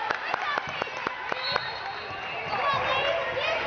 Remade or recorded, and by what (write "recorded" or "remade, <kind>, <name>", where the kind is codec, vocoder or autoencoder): recorded